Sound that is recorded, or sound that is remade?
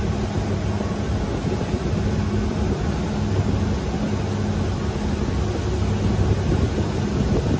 recorded